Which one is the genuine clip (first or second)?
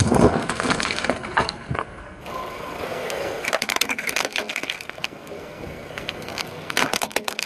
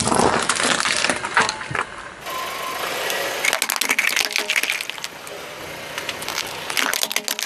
second